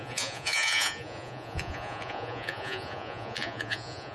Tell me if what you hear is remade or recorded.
remade